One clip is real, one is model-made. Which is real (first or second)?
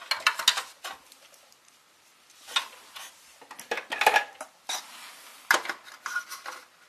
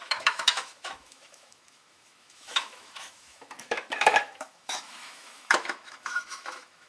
first